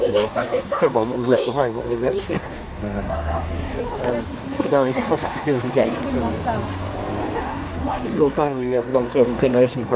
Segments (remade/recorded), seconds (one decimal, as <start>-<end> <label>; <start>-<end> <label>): 0.0-3.8 remade; 3.8-4.3 recorded; 4.3-6.0 remade; 6.0-7.4 recorded; 7.4-10.0 remade